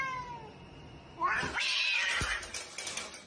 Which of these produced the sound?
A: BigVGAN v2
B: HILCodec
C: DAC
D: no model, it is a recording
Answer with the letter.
D